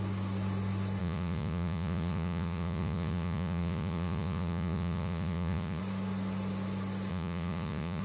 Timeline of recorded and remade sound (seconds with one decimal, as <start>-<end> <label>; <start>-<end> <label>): 0.0-1.0 recorded; 1.0-5.8 remade; 5.8-7.1 recorded; 7.1-8.0 remade